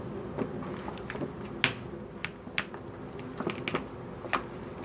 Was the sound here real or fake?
real